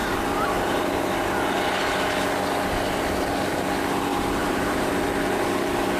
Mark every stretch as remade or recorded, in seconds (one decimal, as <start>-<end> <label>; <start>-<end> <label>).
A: 0.0-0.8 remade; 0.8-4.1 recorded; 4.1-4.9 remade; 4.9-6.0 recorded